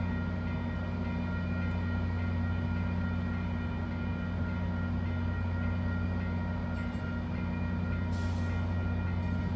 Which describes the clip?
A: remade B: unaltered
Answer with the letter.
B